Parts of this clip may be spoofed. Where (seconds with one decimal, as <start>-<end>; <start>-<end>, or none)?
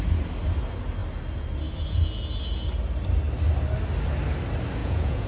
4.8-5.3